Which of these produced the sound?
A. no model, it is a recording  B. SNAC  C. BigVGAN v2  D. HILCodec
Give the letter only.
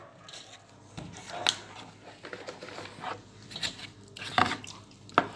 A